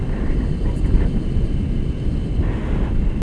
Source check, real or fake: real